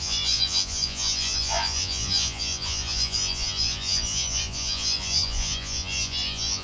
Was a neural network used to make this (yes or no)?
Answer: yes